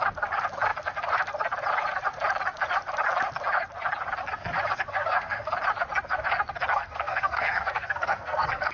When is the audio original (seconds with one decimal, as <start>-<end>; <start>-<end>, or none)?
0.0-4.9; 5.5-6.7